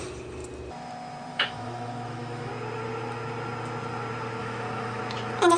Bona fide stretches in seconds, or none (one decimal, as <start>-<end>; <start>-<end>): 0.0-1.3; 2.5-4.4; 5.0-5.6